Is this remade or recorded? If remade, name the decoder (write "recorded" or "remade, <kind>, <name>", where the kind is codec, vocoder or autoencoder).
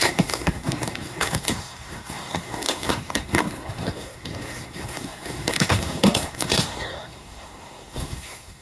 remade, codec, SNAC